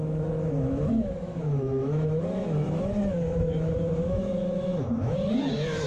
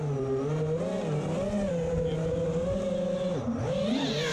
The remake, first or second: first